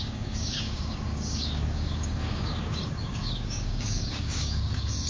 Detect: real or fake fake